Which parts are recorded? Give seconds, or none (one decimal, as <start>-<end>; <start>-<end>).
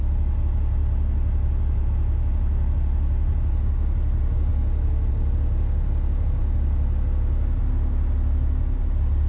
0.0-9.3